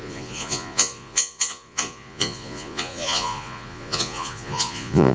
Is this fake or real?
fake